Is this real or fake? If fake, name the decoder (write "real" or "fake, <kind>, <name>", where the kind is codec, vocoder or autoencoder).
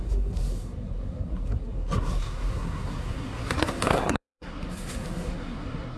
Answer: fake, codec, SNAC